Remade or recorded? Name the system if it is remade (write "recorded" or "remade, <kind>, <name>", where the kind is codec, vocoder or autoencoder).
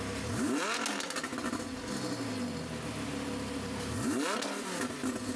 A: recorded